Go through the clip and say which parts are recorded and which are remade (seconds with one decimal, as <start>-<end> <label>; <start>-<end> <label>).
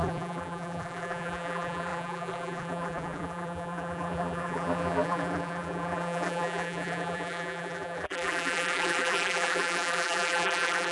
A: 0.0-10.9 remade